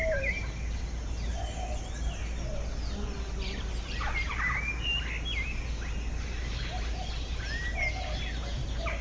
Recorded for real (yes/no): yes